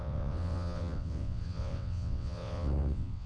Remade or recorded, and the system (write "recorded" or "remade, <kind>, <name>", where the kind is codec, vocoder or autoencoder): remade, vocoder, WaveNeXt